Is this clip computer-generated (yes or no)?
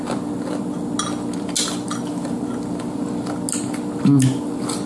no